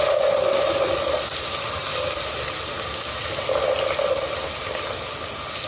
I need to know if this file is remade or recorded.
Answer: recorded